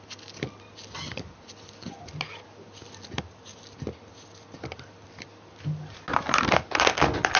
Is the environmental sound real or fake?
real